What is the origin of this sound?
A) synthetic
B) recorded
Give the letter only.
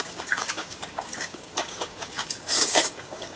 A